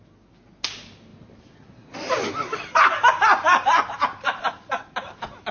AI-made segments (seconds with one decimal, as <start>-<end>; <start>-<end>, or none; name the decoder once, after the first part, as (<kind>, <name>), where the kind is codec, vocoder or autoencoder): 1.1-4.4 (vocoder, BigVGAN v2)